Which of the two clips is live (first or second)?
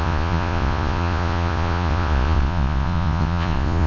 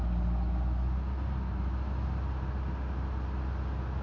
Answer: second